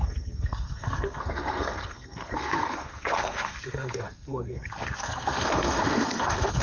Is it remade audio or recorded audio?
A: remade